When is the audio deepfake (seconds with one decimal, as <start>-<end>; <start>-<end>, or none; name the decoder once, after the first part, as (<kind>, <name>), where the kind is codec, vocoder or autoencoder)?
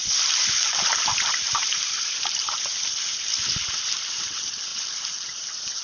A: none